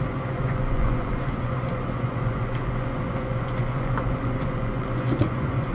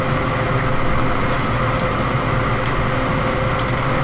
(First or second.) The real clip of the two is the second